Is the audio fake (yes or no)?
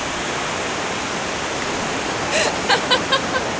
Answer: no